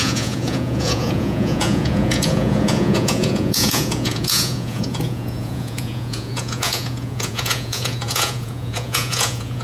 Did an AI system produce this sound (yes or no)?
yes